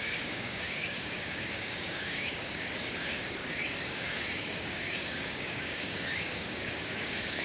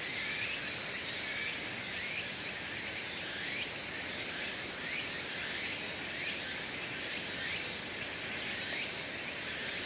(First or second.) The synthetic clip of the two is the first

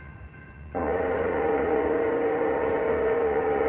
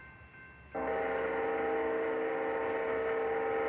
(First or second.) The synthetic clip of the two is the first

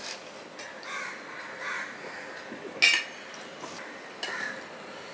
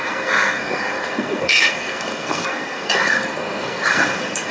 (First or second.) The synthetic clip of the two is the second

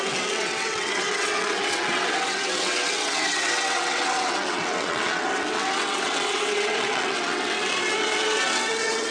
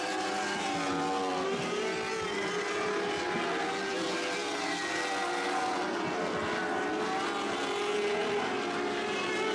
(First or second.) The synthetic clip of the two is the first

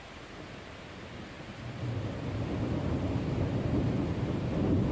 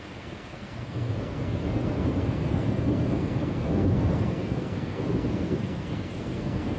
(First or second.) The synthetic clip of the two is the second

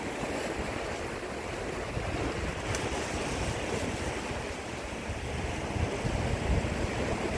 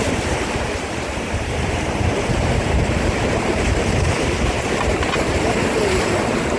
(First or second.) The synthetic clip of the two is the second